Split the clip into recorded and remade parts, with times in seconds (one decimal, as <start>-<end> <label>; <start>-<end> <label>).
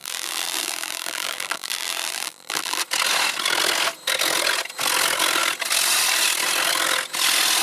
0.0-2.8 remade; 2.8-7.6 recorded